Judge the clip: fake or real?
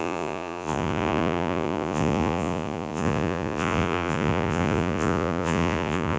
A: fake